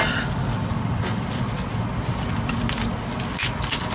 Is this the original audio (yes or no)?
yes